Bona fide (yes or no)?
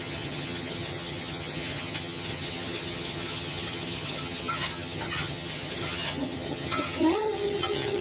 no